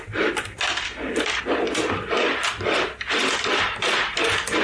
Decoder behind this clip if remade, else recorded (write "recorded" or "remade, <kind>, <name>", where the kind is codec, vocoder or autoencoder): remade, vocoder, BigVGAN v2